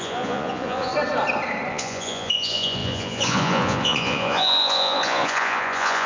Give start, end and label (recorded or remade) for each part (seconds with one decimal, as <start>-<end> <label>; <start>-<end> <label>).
0.0-0.9 remade; 0.9-1.7 recorded; 1.7-6.1 remade